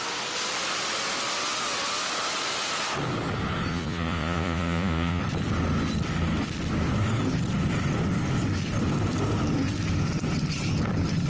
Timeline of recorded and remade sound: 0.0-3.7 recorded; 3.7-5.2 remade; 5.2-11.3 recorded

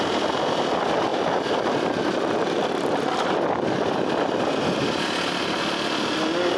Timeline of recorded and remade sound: 0.0-6.6 recorded

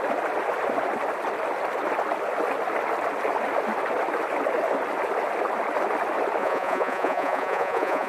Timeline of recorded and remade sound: 0.0-6.4 recorded; 6.4-8.1 remade

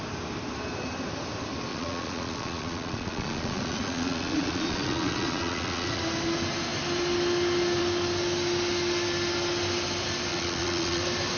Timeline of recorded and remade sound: 0.0-1.7 recorded; 1.7-6.0 remade; 6.0-10.3 recorded; 10.3-11.0 remade; 11.0-11.4 recorded

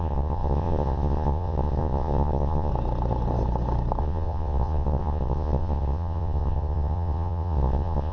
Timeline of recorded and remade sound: 0.0-2.7 remade; 2.7-4.0 recorded; 4.0-8.1 remade